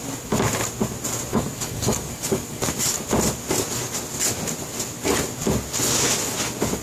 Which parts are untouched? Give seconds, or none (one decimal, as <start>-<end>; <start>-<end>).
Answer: 0.0-1.3; 2.6-6.8